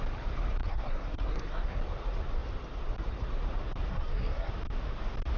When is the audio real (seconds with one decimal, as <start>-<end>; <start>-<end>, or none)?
0.0-0.6; 1.8-3.9; 4.5-5.4